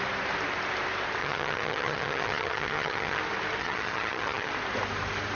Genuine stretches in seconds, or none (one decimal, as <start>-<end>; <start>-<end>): 0.0-1.2; 3.2-3.6; 4.5-5.3